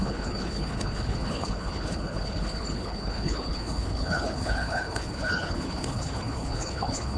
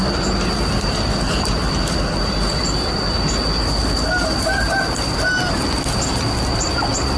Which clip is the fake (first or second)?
first